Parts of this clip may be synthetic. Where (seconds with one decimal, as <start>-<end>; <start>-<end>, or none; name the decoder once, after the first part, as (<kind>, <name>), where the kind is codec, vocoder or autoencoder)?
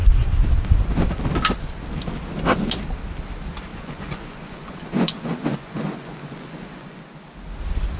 3.7-7.0 (vocoder, Vocos)